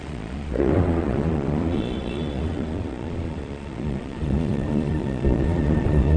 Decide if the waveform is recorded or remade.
remade